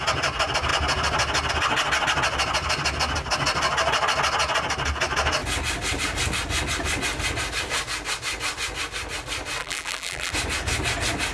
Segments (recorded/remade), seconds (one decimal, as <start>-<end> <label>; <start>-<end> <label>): 0.0-9.6 recorded; 9.6-10.3 remade; 10.3-11.3 recorded